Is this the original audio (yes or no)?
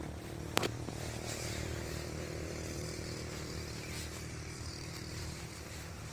no